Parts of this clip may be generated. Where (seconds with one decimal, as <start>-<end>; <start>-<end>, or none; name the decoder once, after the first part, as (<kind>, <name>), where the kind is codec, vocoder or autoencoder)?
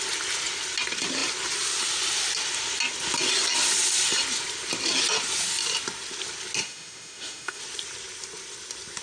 6.6-7.6 (autoencoder, DAC-VAE)